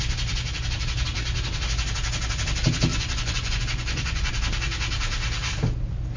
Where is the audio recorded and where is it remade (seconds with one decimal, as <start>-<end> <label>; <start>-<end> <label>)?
0.0-2.9 recorded; 2.9-4.3 remade; 4.3-6.2 recorded